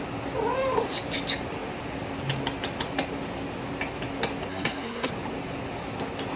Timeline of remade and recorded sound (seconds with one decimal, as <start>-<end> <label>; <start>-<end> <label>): 0.0-4.5 recorded; 4.5-5.1 remade; 5.1-6.4 recorded